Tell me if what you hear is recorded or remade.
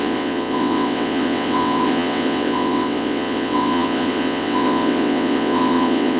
remade